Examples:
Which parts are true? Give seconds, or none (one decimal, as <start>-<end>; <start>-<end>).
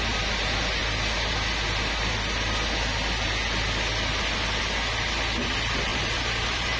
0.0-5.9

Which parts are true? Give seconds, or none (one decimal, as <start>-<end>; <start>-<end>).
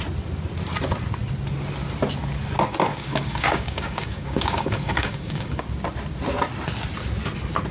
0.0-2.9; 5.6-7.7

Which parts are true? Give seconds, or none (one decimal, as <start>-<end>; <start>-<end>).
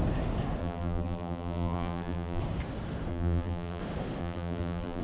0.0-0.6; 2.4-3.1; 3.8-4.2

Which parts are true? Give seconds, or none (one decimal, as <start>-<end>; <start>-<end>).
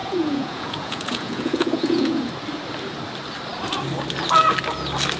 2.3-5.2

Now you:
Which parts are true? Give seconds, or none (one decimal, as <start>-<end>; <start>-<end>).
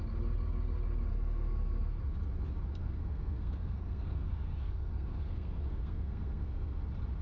0.0-1.1; 2.0-2.8; 6.8-7.2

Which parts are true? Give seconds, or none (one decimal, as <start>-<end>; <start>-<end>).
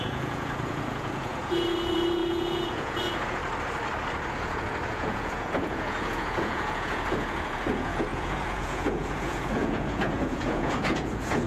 3.4-4.3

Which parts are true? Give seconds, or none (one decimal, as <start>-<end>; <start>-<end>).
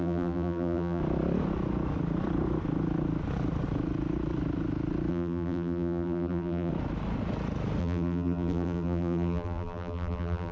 1.0-5.1; 6.7-7.8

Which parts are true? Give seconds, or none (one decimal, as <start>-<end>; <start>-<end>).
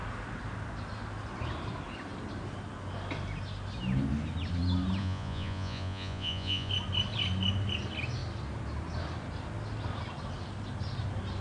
0.0-5.0; 6.7-11.4